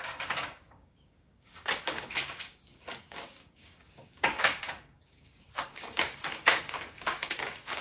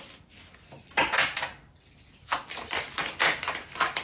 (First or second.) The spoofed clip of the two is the first